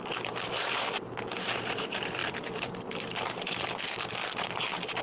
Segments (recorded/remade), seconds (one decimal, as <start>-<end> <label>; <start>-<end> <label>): 0.0-5.0 recorded